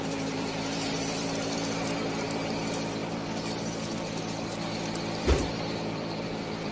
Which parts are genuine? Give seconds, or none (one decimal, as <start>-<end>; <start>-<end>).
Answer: none